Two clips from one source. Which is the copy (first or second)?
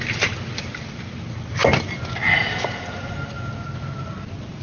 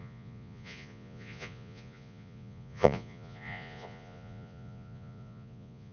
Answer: second